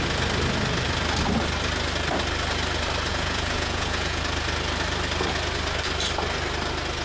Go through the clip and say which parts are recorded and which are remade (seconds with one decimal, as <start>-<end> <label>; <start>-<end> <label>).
0.0-3.1 recorded; 3.1-4.2 remade; 4.2-7.0 recorded